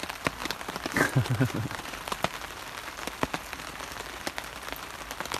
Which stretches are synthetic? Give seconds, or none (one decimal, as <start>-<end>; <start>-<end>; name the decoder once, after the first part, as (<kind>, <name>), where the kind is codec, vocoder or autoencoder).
0.4-2.0 (vocoder, BigVGAN v2)